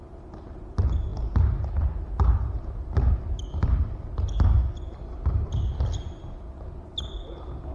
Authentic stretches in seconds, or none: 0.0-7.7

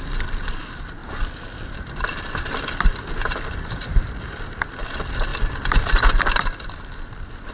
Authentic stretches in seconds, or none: 0.0-7.5

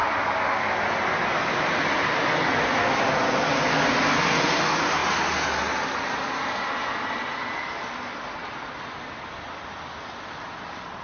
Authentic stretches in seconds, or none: 0.0-11.0

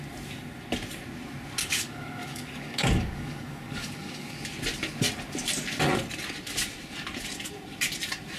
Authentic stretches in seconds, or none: 0.0-1.6; 4.4-8.4